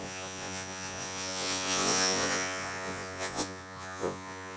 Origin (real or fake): fake